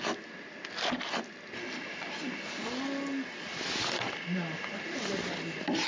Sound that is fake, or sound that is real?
real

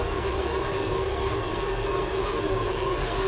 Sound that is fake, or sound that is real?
fake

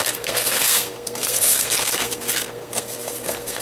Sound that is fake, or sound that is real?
fake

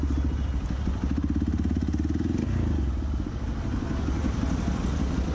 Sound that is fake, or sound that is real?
real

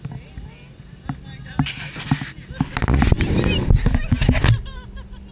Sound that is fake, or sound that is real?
real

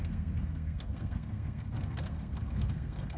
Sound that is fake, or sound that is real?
fake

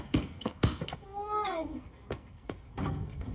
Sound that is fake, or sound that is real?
fake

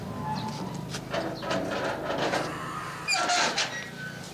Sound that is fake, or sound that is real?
real